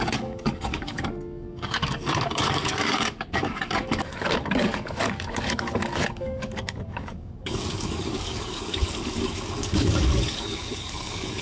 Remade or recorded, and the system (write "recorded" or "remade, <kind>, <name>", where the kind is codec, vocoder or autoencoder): remade, codec, DAC